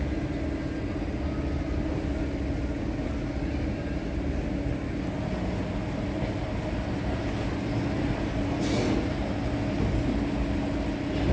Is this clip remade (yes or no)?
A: no